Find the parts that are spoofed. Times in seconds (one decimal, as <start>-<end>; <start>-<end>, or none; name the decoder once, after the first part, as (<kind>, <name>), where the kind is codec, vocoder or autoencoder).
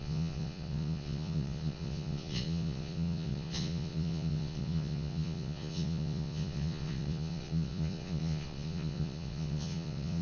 0.0-10.2 (vocoder, Vocos)